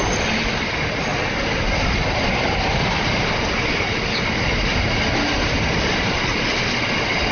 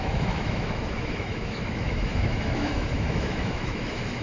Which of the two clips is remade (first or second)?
second